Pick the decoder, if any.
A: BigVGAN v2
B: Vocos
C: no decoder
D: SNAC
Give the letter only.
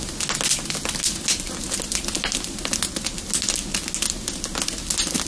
C